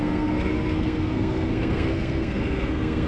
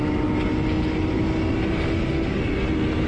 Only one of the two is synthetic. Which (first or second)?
first